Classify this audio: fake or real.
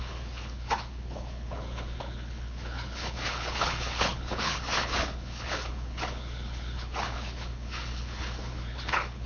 fake